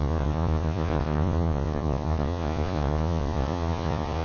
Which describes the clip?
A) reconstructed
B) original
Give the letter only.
A